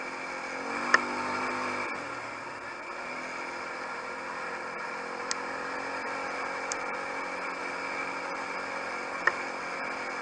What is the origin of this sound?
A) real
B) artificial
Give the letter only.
A